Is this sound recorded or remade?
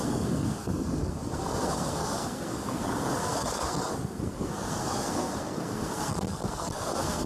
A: remade